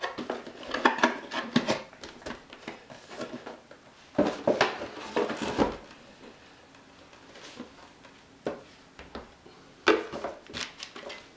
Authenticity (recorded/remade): recorded